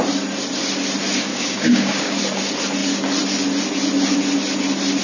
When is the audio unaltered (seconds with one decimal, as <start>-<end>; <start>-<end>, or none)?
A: 0.0-1.3; 2.2-5.0